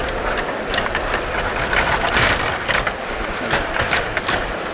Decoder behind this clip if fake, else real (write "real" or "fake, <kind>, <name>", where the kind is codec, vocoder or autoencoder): real